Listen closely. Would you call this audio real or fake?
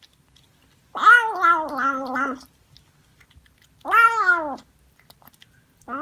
real